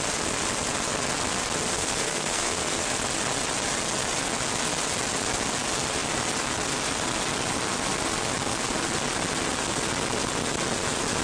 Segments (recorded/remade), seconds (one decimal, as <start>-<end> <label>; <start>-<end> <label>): 0.0-1.7 recorded; 1.7-2.8 remade; 2.8-11.2 recorded